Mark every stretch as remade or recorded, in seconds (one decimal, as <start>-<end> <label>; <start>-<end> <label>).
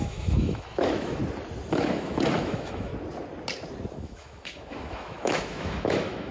0.0-1.2 remade; 1.2-1.7 recorded; 1.7-2.9 remade; 2.9-3.9 recorded; 3.9-6.3 remade